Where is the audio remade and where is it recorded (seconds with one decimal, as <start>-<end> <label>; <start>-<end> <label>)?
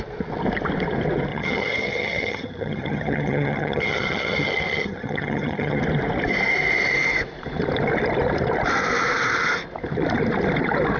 0.0-1.3 recorded; 1.3-5.8 remade; 5.8-11.0 recorded